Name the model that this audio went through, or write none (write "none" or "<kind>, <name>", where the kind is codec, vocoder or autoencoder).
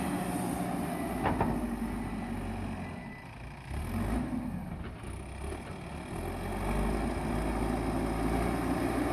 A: none